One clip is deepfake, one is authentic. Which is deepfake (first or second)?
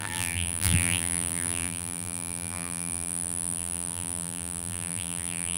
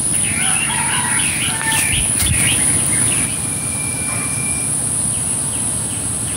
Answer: first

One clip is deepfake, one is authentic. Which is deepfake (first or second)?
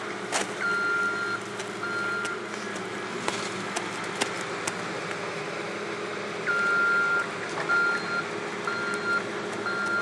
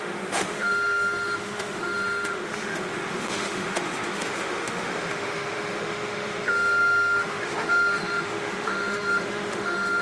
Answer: second